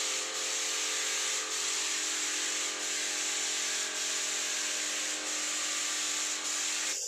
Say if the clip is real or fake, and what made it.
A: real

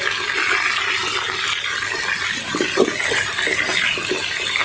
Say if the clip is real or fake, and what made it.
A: real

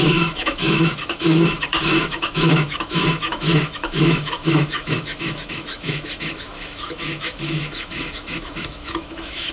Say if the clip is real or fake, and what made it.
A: fake, autoencoder, DAC-VAE